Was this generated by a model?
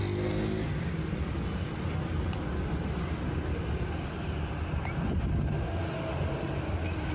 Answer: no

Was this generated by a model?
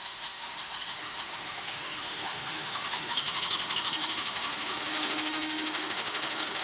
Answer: yes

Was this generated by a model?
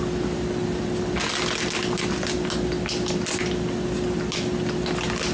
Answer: no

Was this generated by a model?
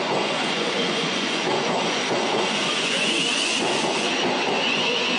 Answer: yes